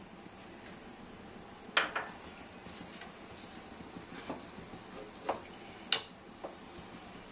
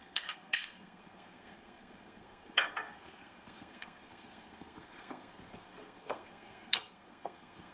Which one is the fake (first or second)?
second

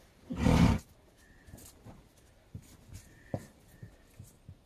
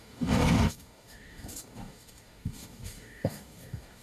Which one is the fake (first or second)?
second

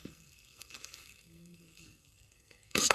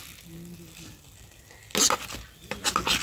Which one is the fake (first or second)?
first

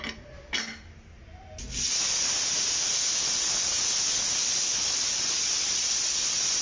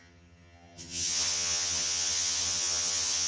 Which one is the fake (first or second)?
second